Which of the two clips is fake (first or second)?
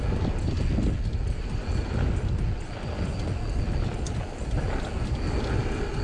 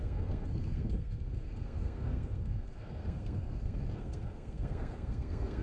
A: second